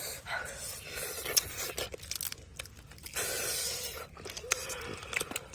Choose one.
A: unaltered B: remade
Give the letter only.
A